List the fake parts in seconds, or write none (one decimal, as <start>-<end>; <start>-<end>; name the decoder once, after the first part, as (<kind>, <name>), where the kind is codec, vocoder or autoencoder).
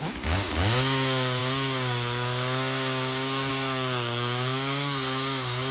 0.0-5.7 (codec, DAC)